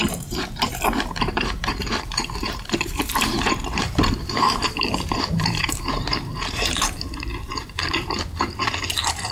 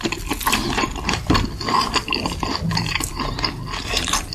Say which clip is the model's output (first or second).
first